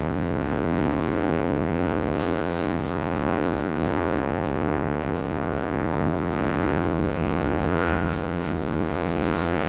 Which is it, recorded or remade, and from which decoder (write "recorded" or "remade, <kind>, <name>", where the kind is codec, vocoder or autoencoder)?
remade, vocoder, Vocos